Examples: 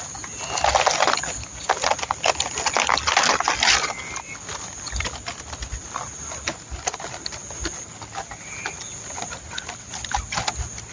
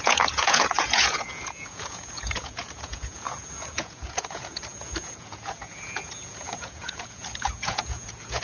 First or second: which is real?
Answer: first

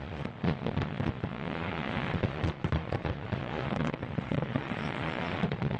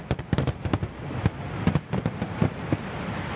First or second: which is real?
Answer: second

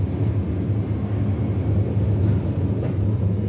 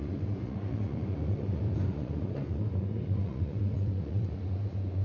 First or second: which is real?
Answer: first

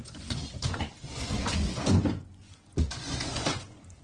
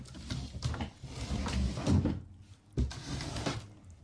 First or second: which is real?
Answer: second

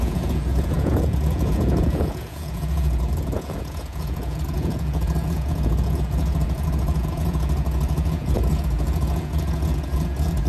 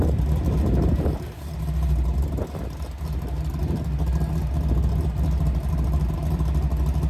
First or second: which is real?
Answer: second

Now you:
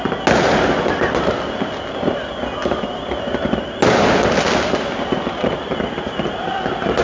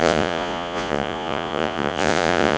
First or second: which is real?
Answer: first